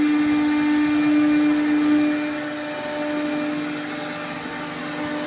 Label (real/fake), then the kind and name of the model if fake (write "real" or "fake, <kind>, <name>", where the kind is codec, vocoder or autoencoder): real